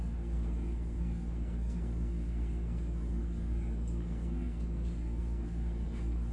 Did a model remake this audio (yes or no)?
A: yes